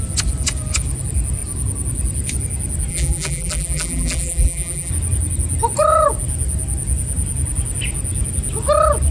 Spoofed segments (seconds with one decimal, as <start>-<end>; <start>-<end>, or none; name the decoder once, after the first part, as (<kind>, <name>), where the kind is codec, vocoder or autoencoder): 2.9-4.9 (vocoder, BigVGAN v2)